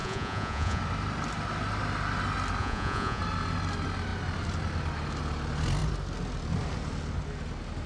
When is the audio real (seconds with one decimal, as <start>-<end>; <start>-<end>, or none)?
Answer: 0.8-2.6; 3.2-7.9